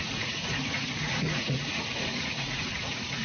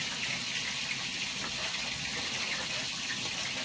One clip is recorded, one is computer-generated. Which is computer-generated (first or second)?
first